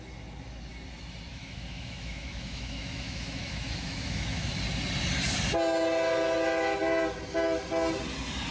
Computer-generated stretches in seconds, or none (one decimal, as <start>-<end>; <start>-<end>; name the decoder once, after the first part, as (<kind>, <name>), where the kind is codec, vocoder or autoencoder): 1.3-4.5 (autoencoder, DAC-VAE)